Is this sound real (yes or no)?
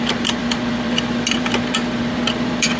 no